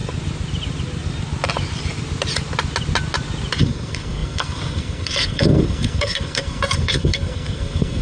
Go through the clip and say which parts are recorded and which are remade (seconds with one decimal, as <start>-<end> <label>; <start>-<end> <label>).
0.0-3.6 recorded; 3.6-8.0 remade